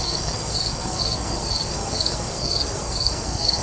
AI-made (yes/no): yes